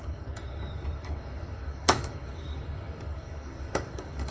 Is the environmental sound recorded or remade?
remade